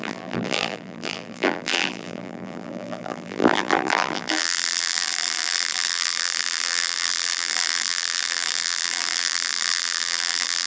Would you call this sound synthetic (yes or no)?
yes